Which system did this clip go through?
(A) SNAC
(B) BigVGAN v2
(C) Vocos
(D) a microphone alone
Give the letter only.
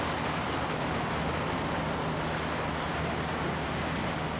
D